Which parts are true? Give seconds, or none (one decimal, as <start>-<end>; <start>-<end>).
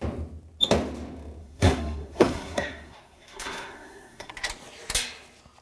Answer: 0.0-1.4; 4.3-5.6